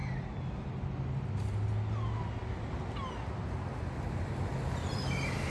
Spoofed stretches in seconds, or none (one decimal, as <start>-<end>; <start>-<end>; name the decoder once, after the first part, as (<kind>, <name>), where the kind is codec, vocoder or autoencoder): 0.0-0.7 (vocoder, BigVGAN v2)